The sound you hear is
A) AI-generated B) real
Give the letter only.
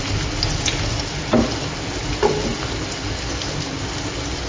B